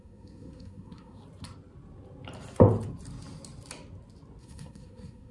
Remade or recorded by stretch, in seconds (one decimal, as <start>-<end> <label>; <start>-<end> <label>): 0.0-1.2 remade; 1.2-4.4 recorded; 4.4-5.3 remade

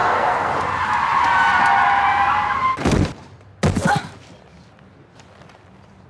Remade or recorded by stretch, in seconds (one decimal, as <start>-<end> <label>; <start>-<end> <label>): 0.0-0.5 remade; 0.5-6.1 recorded

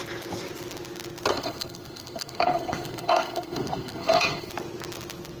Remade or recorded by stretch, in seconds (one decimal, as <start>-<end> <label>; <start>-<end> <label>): 0.0-1.3 recorded; 1.3-4.5 remade; 4.5-5.4 recorded

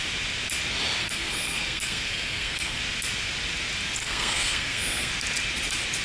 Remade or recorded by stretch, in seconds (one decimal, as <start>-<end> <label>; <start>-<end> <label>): 0.0-1.0 recorded; 1.0-2.8 remade; 2.8-4.0 recorded; 4.0-5.1 remade; 5.1-6.0 recorded

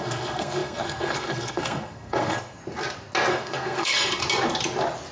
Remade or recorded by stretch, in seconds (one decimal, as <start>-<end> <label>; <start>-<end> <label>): 0.0-2.6 remade; 2.6-3.3 recorded; 3.3-4.2 remade; 4.2-5.1 recorded